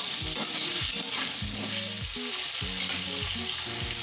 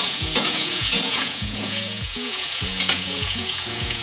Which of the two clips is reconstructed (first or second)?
second